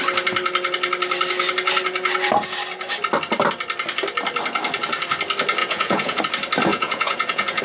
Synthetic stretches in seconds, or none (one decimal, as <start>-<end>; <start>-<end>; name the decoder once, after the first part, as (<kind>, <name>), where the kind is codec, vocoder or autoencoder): 5.6-6.2 (vocoder, Vocos); 6.7-7.6